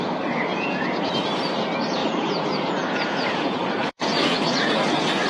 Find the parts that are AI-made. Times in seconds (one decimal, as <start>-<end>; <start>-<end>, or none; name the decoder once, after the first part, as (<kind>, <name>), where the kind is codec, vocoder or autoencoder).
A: 0.5-1.1 (vocoder, Vocos); 2.0-5.3